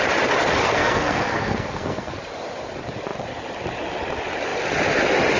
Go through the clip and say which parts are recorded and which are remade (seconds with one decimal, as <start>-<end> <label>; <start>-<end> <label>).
0.0-0.6 recorded; 0.6-2.2 remade; 2.2-5.4 recorded